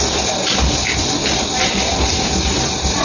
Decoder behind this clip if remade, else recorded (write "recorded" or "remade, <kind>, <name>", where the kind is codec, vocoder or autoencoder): recorded